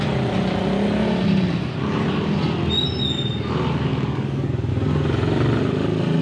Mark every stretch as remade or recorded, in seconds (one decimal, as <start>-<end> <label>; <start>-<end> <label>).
0.0-3.9 recorded; 3.9-4.7 remade; 4.7-6.2 recorded